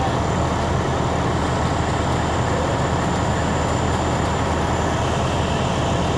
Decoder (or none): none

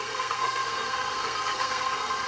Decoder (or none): codec, SNAC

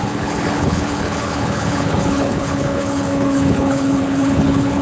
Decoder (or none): codec, HILCodec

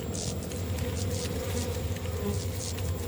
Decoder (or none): vocoder, BigVGAN v2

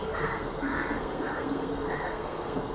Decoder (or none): codec, SNAC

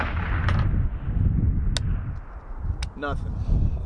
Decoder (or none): none